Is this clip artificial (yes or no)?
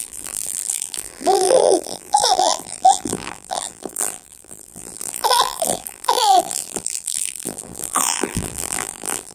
yes